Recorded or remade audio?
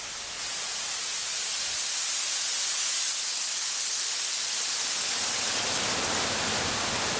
recorded